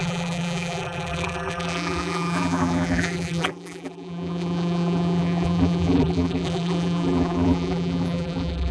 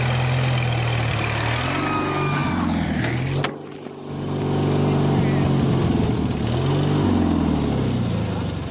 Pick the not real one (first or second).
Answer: first